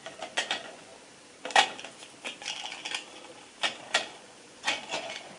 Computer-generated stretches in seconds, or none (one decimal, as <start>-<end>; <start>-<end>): 0.0-0.9; 4.1-5.4